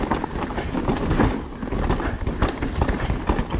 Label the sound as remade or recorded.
recorded